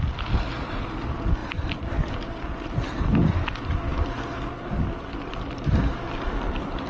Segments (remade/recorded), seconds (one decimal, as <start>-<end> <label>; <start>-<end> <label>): 0.0-6.9 recorded